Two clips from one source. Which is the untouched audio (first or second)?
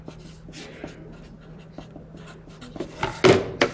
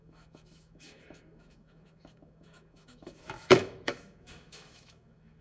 first